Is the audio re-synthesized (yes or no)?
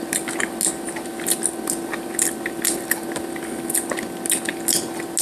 no